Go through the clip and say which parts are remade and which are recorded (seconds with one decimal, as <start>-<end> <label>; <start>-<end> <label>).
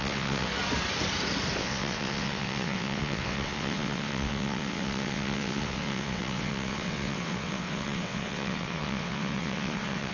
0.0-0.5 remade; 0.5-1.6 recorded; 1.6-10.1 remade